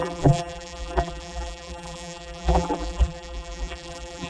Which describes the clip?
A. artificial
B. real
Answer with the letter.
A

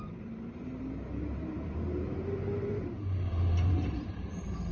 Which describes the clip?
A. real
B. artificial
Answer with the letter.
B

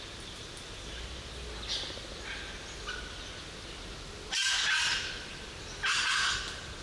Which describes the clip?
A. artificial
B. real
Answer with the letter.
B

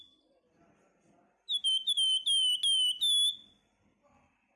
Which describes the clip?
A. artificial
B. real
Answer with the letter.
B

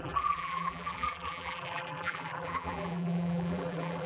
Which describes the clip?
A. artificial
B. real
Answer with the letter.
A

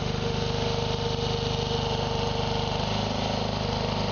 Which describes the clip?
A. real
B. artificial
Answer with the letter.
A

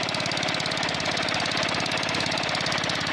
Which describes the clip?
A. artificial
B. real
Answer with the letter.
B